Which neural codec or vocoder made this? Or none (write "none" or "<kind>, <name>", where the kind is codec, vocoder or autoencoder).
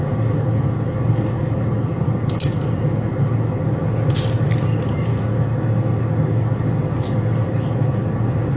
none